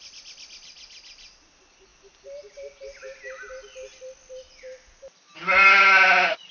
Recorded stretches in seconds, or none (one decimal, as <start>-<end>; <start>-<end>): 0.0-6.5